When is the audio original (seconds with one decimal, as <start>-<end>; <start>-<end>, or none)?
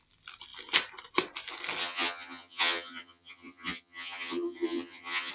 0.0-1.8